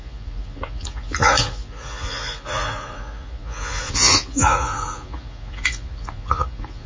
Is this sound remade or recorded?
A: remade